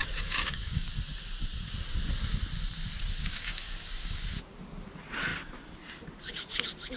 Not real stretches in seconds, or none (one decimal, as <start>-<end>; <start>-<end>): 0.0-1.0; 3.2-4.2